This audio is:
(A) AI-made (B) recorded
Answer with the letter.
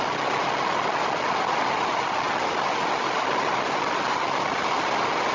B